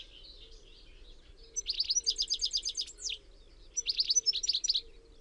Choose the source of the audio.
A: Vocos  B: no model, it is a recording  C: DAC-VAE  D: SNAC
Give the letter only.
B